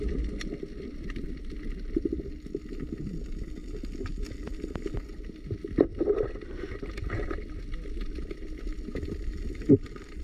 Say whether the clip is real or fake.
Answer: real